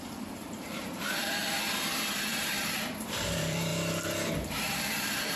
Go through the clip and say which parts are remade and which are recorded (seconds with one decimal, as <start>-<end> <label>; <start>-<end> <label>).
0.0-1.4 remade; 1.4-2.1 recorded; 2.1-3.7 remade; 3.7-4.5 recorded; 4.5-5.4 remade